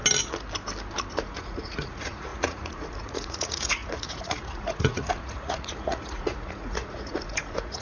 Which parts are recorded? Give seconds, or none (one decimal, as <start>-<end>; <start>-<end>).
0.0-1.1